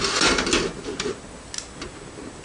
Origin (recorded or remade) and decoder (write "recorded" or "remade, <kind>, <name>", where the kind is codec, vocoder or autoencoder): recorded